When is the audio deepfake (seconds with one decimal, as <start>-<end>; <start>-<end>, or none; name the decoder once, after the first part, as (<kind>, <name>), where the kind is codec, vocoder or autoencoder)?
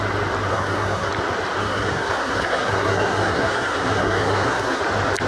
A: 0.5-1.1 (codec, SNAC); 1.6-4.8